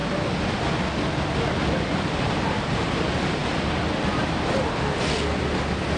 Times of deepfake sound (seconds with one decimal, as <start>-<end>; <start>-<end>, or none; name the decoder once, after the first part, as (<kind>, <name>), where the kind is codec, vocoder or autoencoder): none